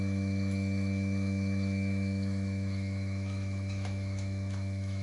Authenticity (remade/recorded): remade